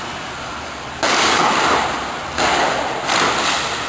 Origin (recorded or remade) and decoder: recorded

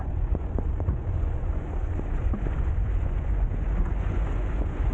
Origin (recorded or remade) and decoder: remade, vocoder, Vocos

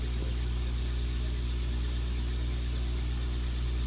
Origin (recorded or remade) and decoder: recorded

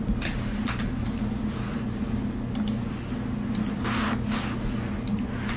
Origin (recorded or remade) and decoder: recorded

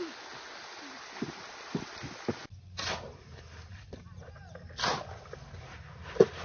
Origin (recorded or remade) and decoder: recorded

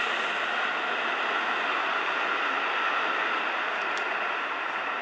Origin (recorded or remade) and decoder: recorded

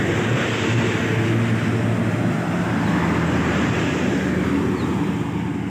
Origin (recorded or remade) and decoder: recorded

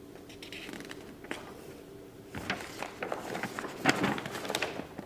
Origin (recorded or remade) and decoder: recorded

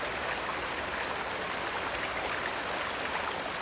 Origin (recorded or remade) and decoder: recorded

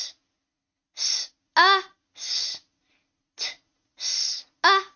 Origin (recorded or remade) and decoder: recorded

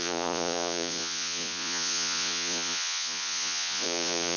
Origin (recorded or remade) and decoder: remade, vocoder, Vocos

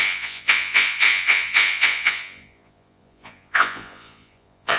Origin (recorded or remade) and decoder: remade, vocoder, Vocos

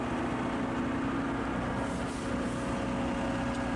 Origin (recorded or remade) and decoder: recorded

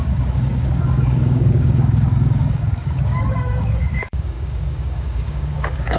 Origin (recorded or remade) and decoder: remade, codec, DAC